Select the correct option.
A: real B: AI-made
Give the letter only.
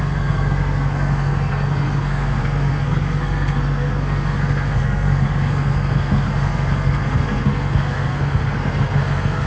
B